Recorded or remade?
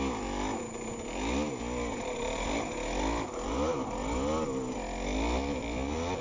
recorded